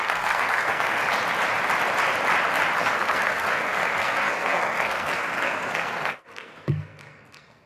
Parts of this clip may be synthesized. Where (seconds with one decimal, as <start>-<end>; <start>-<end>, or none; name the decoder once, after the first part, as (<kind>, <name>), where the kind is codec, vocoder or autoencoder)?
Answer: 0.0-1.0 (codec, SNAC); 2.8-7.7